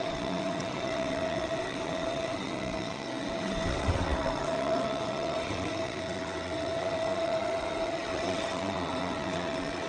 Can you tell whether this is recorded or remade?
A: remade